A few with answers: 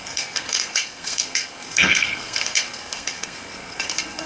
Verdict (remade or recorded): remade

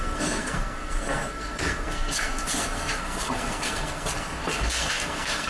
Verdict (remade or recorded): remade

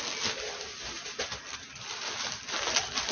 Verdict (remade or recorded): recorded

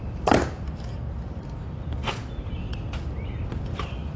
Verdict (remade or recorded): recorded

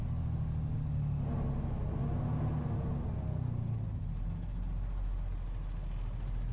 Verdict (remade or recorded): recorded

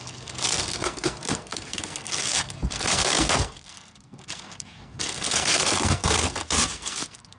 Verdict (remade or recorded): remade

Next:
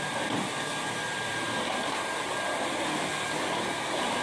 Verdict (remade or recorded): recorded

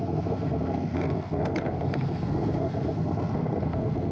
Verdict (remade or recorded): remade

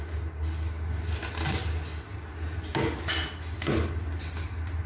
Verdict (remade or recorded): recorded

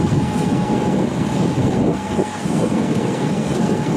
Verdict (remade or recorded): remade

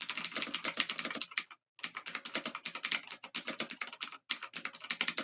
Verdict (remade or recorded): recorded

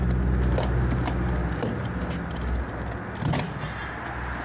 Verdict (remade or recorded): recorded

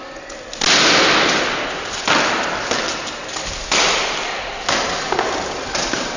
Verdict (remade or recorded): recorded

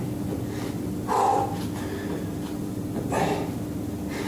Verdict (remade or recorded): recorded